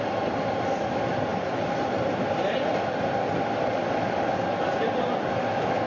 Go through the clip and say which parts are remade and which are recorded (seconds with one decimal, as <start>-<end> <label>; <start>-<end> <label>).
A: 0.0-1.3 recorded; 1.3-2.9 remade; 2.9-5.9 recorded